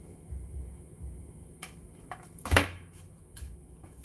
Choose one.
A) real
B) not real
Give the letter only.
B